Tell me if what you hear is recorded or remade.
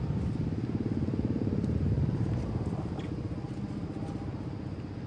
recorded